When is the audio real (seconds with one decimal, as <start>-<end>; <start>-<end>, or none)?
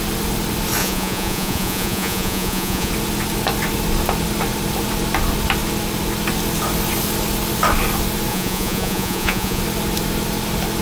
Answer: 0.0-0.8; 2.9-8.3; 9.6-10.8